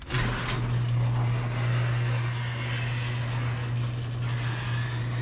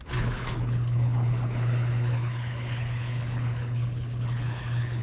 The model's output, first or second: second